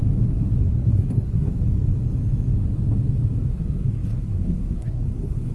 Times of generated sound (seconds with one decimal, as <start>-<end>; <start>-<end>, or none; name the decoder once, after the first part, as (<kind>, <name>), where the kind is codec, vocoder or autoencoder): 0.6-1.5 (codec, SNAC); 3.4-5.5